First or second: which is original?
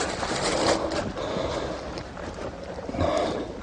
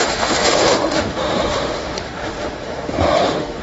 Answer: first